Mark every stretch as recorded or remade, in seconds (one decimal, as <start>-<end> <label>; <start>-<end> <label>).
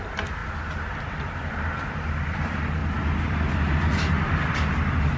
0.0-0.4 remade; 0.4-1.0 recorded; 1.0-5.2 remade